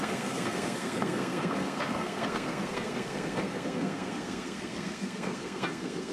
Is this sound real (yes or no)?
no